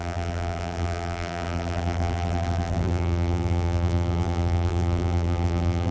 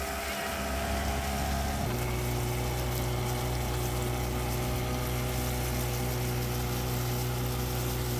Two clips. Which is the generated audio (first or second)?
first